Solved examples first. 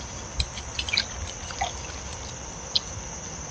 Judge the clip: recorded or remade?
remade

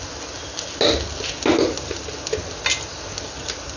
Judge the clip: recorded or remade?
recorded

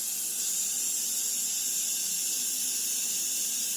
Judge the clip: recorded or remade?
recorded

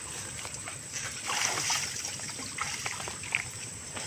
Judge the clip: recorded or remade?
recorded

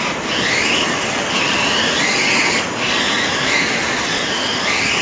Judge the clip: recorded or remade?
recorded